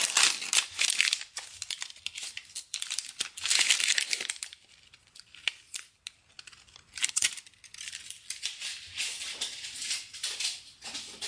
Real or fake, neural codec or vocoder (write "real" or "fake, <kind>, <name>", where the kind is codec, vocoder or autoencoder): real